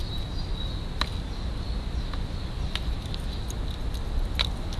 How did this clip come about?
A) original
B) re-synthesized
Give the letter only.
A